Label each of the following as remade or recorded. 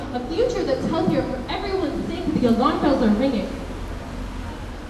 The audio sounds recorded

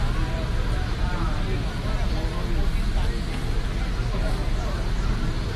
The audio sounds recorded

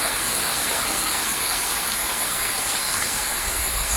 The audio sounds remade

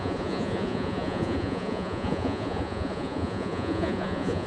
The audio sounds remade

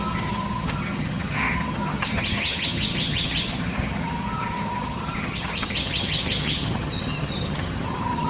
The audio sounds remade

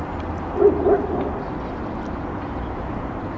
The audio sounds recorded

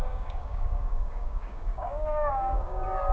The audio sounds remade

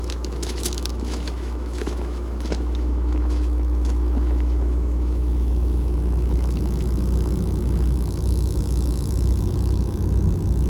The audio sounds remade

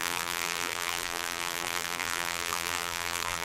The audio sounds remade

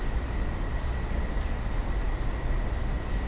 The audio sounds recorded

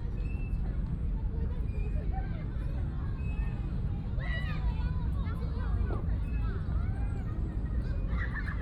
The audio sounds recorded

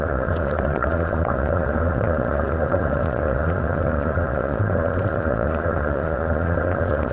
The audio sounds remade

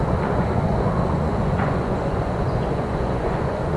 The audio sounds remade